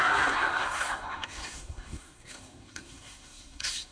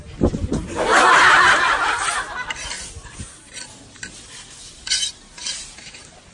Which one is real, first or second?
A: second